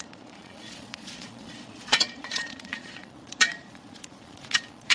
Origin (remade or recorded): remade